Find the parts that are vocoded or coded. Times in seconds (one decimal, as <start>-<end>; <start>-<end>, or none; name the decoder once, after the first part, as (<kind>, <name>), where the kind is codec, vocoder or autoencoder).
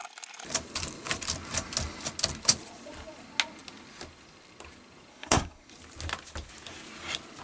5.1-5.7 (codec, SNAC)